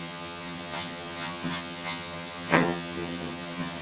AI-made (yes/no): yes